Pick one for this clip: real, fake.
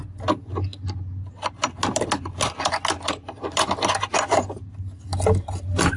real